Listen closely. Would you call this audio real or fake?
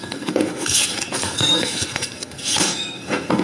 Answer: fake